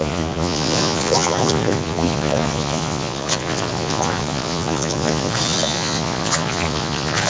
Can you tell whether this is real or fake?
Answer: fake